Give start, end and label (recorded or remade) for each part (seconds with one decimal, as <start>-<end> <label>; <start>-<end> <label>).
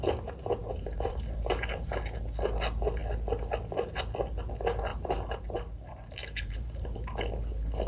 0.0-0.6 recorded; 0.6-2.0 remade; 2.0-4.9 recorded; 4.9-5.6 remade; 5.6-6.2 recorded; 6.2-7.2 remade; 7.2-7.9 recorded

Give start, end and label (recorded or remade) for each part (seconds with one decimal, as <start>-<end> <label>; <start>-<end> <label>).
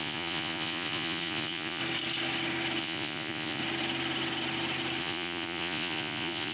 0.0-1.8 remade; 1.8-2.8 recorded; 2.8-3.6 remade; 3.6-5.0 recorded; 5.0-6.5 remade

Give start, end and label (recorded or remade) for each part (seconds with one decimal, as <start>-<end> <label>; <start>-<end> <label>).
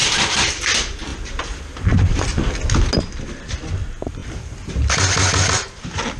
0.0-6.2 recorded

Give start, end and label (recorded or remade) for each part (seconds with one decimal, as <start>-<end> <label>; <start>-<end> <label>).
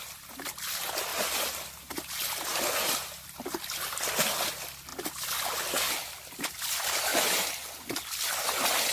0.0-8.9 recorded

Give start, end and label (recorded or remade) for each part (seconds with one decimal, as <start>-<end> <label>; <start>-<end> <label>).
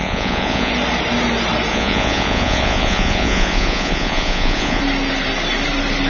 0.0-0.7 remade; 0.7-1.7 recorded; 1.7-4.8 remade; 4.8-6.1 recorded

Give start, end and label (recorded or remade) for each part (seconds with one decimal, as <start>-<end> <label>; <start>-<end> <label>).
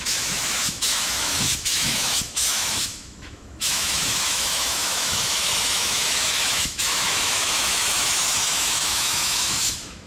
0.0-10.1 remade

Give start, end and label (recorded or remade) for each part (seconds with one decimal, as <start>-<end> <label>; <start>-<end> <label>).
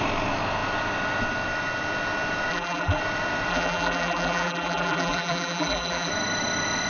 0.0-2.5 recorded; 2.5-3.0 remade; 3.0-3.5 recorded; 3.5-6.1 remade; 6.1-6.9 recorded